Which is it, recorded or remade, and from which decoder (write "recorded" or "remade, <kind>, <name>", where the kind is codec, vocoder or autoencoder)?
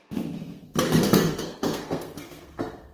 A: remade, codec, SNAC